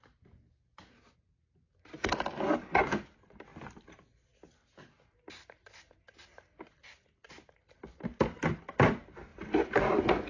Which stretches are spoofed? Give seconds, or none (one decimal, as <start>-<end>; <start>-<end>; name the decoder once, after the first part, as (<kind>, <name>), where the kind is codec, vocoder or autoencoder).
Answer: 3.5-4.0 (vocoder, BigVGAN v2); 9.3-10.3